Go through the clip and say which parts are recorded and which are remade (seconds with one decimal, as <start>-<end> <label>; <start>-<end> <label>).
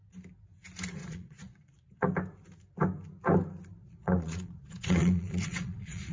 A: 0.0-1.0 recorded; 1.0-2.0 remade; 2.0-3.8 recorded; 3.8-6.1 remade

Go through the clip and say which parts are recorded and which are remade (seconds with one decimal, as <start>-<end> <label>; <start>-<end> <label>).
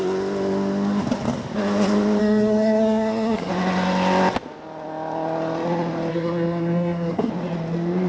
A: 0.0-2.2 recorded; 2.2-3.5 remade; 3.5-6.1 recorded; 6.1-7.3 remade; 7.3-8.1 recorded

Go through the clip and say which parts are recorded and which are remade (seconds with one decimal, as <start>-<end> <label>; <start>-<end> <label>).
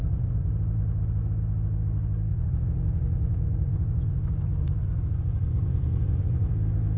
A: 0.0-0.5 remade; 0.5-2.3 recorded; 2.3-6.5 remade; 6.5-7.0 recorded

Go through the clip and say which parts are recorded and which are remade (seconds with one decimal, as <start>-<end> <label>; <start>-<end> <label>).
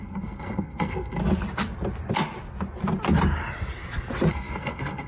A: 0.0-1.2 remade; 1.2-4.3 recorded; 4.3-5.1 remade